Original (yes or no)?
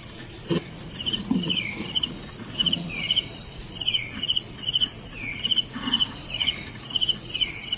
no